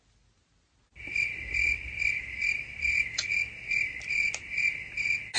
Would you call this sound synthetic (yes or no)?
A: no